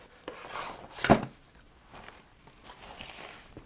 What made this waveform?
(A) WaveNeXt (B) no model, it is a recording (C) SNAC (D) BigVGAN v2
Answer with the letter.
B